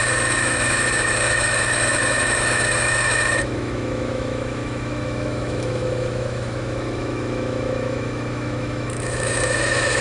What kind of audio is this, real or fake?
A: fake